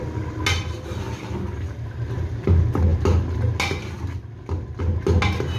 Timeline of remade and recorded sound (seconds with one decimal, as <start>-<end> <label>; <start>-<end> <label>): 0.0-5.6 recorded

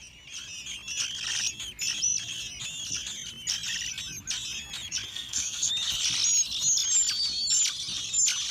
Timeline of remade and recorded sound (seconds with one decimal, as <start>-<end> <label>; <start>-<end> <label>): 0.0-5.1 recorded; 5.1-5.7 remade; 5.7-8.5 recorded

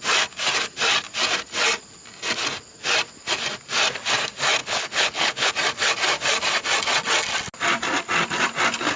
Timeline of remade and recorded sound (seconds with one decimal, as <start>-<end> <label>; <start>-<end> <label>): 0.0-4.6 recorded; 4.6-5.5 remade; 5.5-9.0 recorded

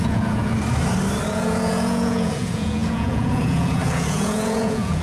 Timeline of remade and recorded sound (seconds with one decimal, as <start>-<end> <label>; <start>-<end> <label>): 0.0-0.5 remade; 0.5-1.3 recorded; 1.3-5.0 remade

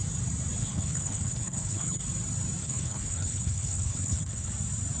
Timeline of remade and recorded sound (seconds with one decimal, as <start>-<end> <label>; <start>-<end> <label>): 0.0-0.6 recorded; 0.6-2.0 remade; 2.0-2.6 recorded; 2.6-4.5 remade; 4.5-5.0 recorded